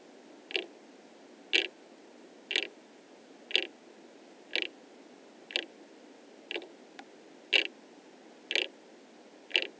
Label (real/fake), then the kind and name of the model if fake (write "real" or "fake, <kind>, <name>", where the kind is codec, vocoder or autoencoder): real